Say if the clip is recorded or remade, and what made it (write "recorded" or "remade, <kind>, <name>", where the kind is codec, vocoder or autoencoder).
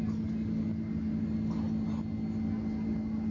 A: recorded